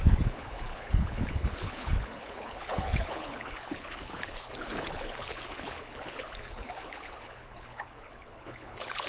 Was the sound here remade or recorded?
remade